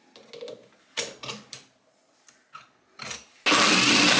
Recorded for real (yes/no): yes